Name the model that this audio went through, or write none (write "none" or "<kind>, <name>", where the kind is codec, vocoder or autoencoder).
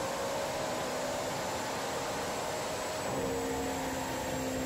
none